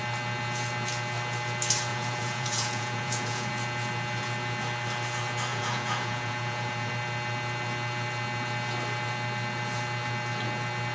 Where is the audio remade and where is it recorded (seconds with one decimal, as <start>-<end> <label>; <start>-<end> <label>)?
0.0-1.9 recorded; 1.9-3.5 remade; 3.5-5.5 recorded; 5.5-6.9 remade; 6.9-10.9 recorded